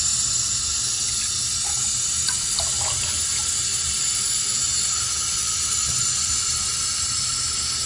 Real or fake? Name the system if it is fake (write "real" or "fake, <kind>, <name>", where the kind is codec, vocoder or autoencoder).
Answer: real